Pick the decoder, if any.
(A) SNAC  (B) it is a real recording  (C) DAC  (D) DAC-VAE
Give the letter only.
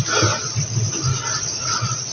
B